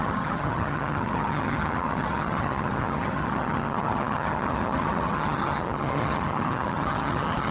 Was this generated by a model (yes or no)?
yes